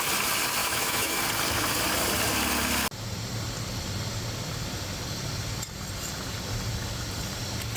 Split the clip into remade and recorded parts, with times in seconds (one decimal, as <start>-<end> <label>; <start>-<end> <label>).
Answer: 0.0-0.6 recorded; 0.6-1.2 remade; 1.2-7.8 recorded